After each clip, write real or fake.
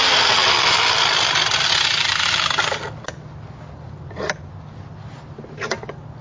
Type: real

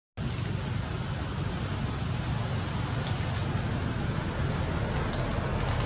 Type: real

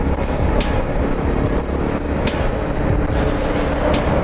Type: real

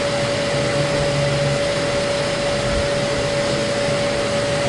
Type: real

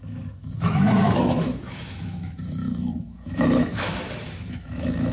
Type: fake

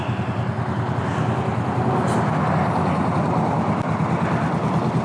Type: real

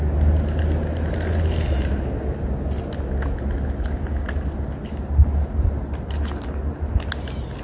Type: real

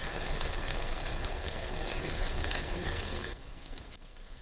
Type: fake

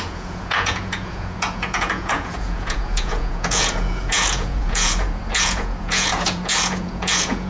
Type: fake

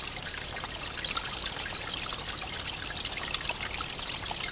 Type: fake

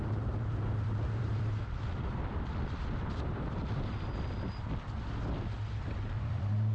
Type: fake